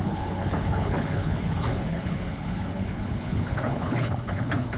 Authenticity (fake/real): fake